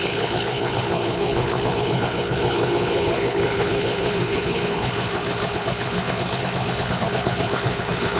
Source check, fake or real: fake